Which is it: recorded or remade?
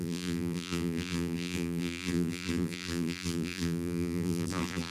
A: remade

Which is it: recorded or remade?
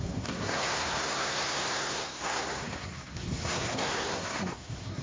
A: remade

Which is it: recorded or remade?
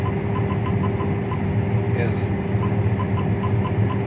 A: recorded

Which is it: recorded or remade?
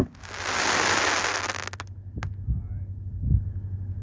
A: recorded